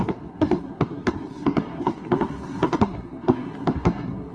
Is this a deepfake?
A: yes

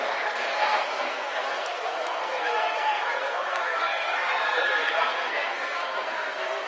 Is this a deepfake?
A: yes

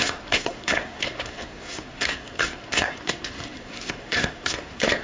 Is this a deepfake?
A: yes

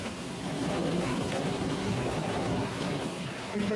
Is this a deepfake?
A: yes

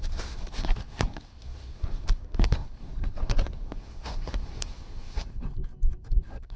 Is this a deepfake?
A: yes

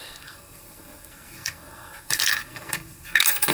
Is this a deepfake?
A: yes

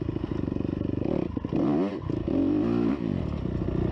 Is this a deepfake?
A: no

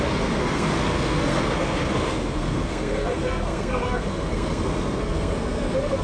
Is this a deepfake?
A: yes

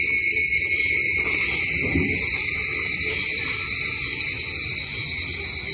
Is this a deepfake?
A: no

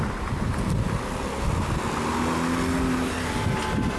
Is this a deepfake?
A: no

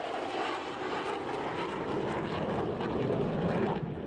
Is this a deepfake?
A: no